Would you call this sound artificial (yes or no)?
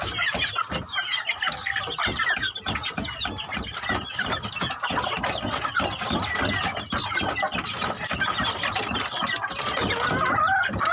no